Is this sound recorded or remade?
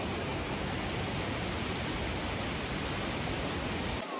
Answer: recorded